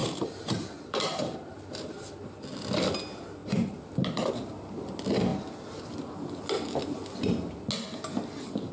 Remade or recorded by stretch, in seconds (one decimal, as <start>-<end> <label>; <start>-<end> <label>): 0.0-2.1 remade; 2.1-8.7 recorded